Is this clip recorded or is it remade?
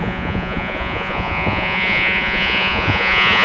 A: remade